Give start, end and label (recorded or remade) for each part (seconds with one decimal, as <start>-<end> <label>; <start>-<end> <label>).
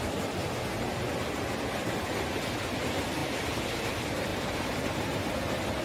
0.0-4.3 recorded; 4.3-5.3 remade; 5.3-5.8 recorded